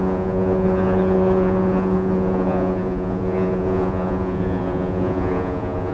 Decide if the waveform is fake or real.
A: fake